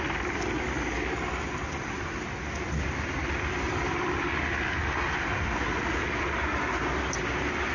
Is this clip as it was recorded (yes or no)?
yes